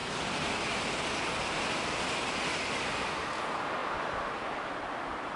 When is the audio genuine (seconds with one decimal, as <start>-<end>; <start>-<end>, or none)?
0.0-5.4